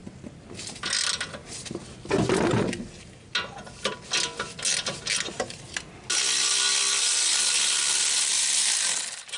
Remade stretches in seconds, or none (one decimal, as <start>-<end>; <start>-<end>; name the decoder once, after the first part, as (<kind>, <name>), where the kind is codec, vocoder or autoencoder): none